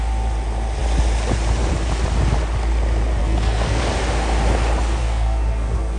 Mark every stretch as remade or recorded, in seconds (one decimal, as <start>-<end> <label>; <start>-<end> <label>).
0.0-3.2 recorded; 3.2-3.8 remade; 3.8-5.0 recorded; 5.0-6.0 remade